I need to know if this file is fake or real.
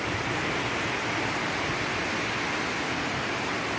real